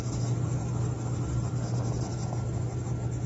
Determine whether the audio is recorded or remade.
recorded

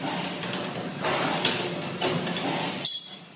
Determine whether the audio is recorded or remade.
recorded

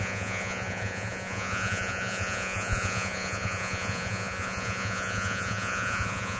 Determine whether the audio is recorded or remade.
remade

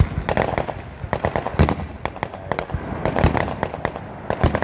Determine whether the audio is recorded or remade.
recorded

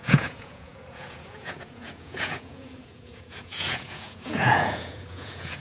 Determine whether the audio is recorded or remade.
remade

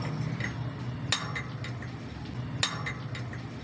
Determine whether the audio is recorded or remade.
recorded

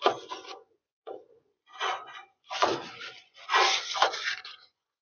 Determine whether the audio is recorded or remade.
remade